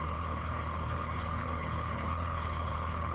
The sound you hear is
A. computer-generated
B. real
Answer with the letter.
A